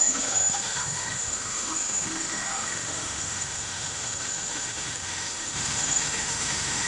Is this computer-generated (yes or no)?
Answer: yes